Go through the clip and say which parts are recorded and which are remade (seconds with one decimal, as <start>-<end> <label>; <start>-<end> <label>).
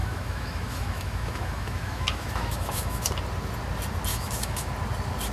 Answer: 0.0-3.1 remade; 3.1-4.1 recorded; 4.1-4.7 remade; 4.7-5.3 recorded